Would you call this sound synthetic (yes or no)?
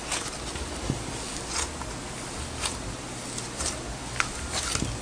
no